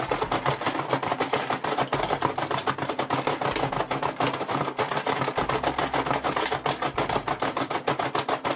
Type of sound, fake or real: real